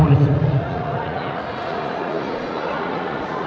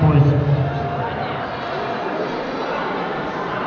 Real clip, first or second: second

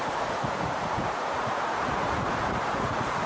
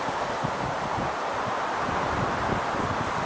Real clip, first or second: second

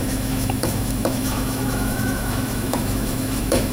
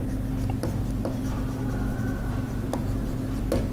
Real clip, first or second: second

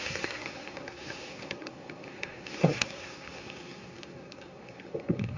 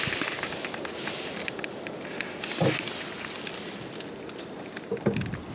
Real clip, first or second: second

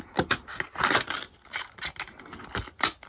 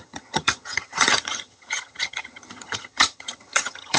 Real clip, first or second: first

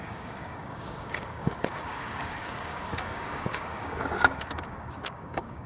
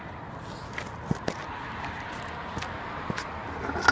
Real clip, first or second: second